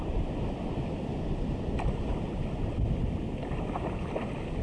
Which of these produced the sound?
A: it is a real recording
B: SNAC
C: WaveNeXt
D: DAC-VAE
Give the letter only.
A